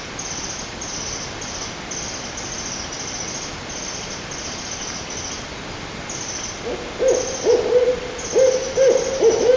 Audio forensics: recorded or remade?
recorded